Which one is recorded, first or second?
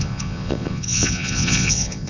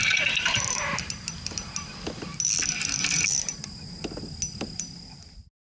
second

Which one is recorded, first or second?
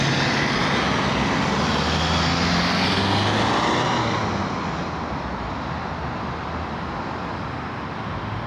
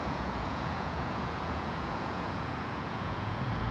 first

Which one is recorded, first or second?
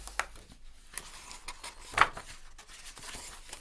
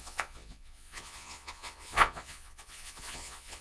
first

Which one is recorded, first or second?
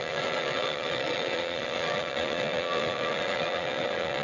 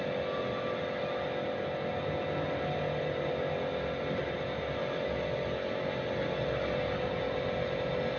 second